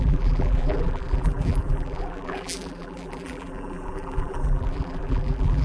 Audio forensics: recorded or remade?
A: remade